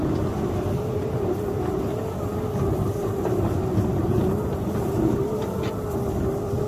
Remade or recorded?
recorded